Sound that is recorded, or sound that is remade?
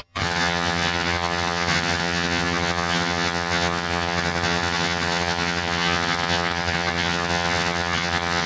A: remade